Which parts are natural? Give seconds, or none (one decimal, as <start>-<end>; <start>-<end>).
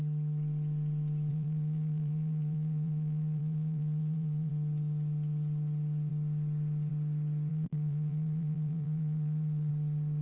0.0-1.3; 4.5-7.5; 9.7-10.2